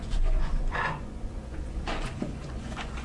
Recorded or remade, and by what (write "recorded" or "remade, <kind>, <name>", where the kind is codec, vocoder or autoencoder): remade, vocoder, Vocos